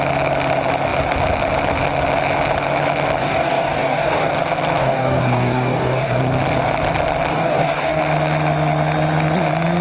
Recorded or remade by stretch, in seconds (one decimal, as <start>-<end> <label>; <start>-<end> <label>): 0.0-3.2 recorded; 3.2-4.3 remade; 4.3-4.8 recorded; 4.8-6.2 remade; 6.2-7.3 recorded; 7.3-8.0 remade; 8.0-9.8 recorded